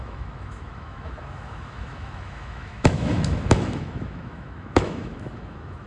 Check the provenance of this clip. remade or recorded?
remade